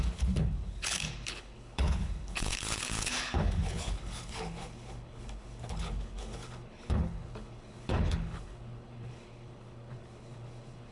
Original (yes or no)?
no